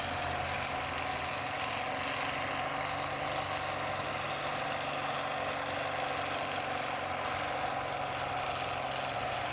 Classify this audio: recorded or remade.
recorded